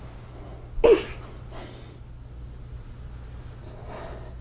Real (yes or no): yes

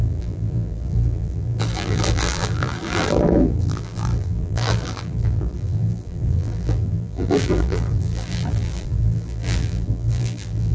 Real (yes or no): no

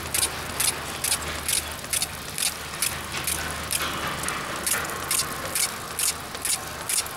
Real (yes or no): yes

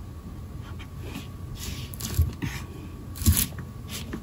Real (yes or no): yes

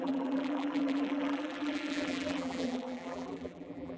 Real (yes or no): no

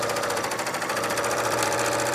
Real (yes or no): no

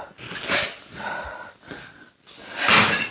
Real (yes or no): yes